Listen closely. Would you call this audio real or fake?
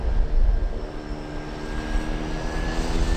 real